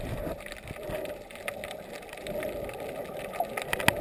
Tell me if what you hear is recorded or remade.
recorded